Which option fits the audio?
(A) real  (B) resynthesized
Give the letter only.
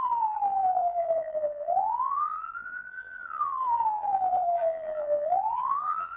B